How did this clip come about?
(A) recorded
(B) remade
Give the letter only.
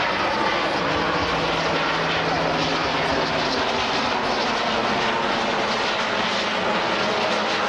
A